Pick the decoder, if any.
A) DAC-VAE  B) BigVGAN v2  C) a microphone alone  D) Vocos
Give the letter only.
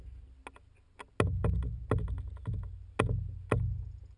C